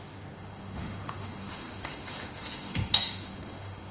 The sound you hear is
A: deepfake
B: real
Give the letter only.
A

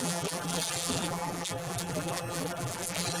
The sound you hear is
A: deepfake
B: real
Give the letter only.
A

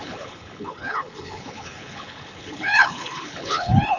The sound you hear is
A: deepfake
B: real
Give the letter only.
A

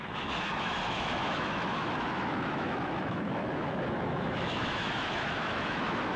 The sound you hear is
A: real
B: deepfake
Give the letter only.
B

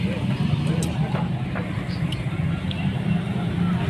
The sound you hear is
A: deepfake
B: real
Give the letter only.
B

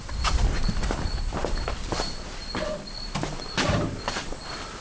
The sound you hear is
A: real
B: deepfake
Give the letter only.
B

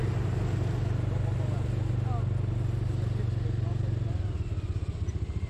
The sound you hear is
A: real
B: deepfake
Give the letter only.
A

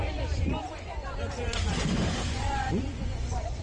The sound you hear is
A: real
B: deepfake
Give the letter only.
B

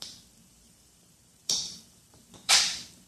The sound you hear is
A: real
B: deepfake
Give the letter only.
B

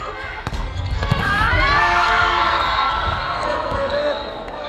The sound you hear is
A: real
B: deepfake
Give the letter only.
B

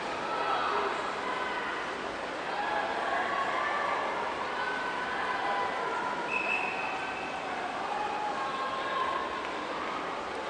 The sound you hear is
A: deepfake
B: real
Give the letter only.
B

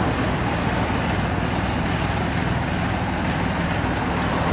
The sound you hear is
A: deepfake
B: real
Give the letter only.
B